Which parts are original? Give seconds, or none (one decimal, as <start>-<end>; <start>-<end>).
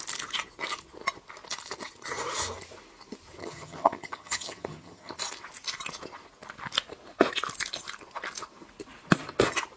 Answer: 0.0-3.4; 5.1-9.8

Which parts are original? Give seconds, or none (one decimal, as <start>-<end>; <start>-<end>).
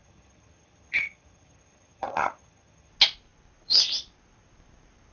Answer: 2.9-5.1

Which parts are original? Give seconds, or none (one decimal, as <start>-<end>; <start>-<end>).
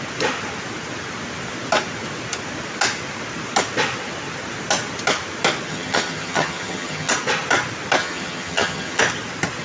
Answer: 0.0-5.7; 7.1-8.0; 9.0-9.6